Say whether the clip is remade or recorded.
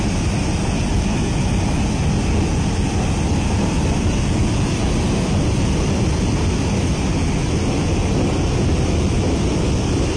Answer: recorded